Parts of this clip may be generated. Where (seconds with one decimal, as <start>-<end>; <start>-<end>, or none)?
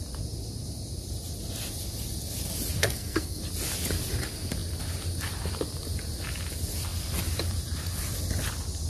2.8-3.4